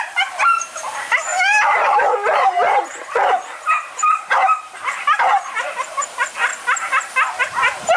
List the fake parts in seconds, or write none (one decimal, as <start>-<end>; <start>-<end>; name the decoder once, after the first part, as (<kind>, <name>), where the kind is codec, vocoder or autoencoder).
0.0-1.3 (vocoder, BigVGAN v2); 1.8-6.5; 7.4-8.0